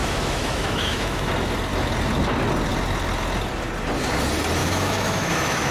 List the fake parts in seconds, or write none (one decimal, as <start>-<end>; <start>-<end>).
0.0-1.3; 4.6-5.7